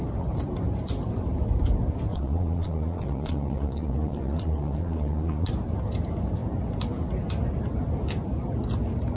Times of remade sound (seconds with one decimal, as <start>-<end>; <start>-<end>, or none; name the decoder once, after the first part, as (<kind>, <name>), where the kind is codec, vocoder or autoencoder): 2.1-5.5 (vocoder, Vocos)